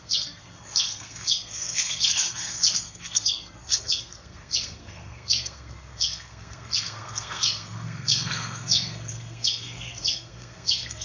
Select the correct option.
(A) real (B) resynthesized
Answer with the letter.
B